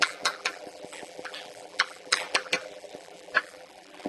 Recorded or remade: remade